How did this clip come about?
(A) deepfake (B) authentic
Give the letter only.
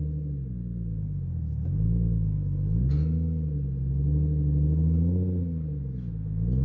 B